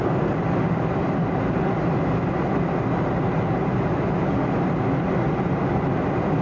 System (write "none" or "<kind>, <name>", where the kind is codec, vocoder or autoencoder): none